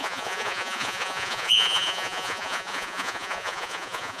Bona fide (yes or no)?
no